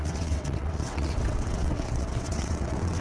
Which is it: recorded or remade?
remade